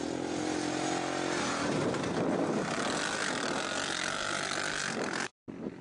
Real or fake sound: real